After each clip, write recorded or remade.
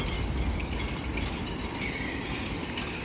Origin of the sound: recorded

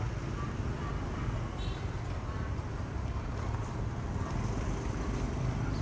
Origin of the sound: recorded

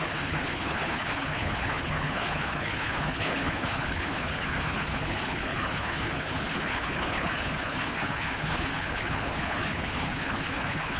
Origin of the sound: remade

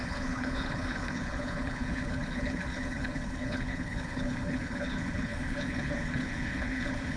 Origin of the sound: remade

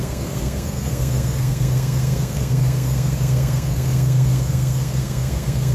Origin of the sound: remade